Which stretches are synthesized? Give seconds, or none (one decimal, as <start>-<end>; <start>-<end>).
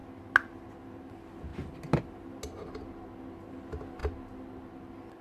none